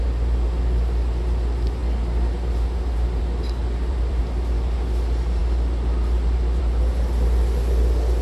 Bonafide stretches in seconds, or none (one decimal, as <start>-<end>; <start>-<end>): 0.0-3.6; 4.2-8.2